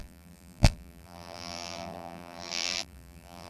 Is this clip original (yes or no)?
no